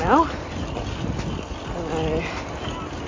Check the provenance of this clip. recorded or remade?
recorded